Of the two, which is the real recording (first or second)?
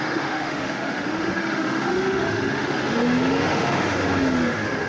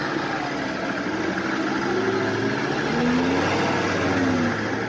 second